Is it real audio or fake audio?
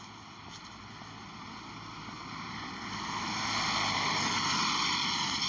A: real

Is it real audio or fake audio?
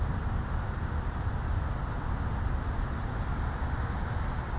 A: real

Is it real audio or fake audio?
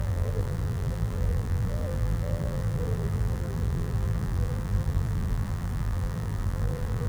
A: fake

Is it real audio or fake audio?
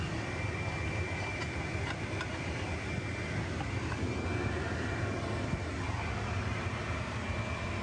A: real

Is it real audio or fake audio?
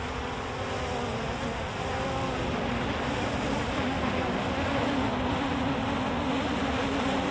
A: real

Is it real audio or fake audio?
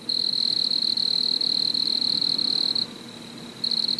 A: real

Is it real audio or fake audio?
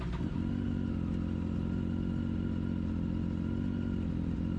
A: real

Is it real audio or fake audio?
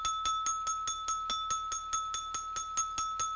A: real